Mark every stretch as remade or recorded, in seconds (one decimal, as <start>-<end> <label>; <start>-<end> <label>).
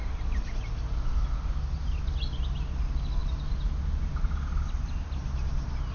0.0-5.9 recorded